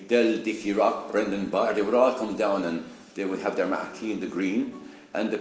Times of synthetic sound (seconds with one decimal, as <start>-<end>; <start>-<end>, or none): 0.0-1.1; 1.7-5.4